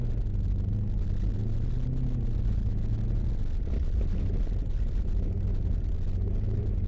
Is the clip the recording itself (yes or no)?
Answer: yes